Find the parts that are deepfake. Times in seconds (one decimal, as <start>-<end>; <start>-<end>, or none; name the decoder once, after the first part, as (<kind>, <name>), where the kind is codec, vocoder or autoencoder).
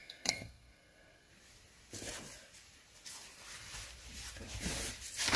0.0-1.3 (codec, SNAC)